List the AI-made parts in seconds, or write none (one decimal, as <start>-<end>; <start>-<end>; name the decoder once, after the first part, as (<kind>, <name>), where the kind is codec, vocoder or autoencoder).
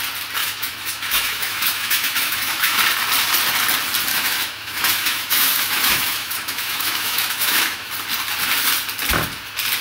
0.4-2.8 (autoencoder, DAC-VAE); 4.1-7.9